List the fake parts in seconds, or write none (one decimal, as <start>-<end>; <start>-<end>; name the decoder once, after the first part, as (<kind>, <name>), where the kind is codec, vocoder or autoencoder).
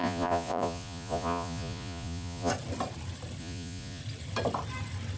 0.0-2.5 (vocoder, Vocos); 3.4-4.0